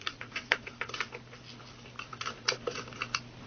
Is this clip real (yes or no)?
yes